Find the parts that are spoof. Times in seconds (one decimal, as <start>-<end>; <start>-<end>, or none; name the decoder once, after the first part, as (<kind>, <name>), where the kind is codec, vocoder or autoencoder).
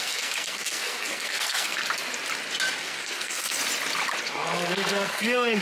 0.0-1.8 (codec, SNAC); 2.8-3.6; 4.2-5.6